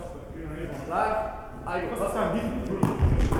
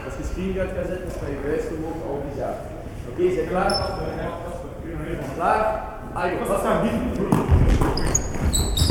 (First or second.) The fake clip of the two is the second